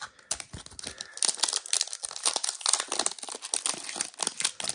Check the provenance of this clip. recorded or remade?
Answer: recorded